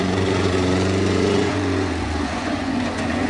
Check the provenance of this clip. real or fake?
fake